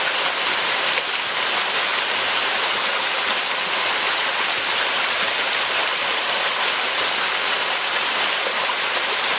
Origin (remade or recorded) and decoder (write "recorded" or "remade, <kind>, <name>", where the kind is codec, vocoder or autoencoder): recorded